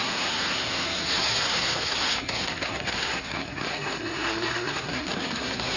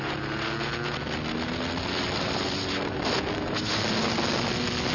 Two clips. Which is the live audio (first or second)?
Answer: second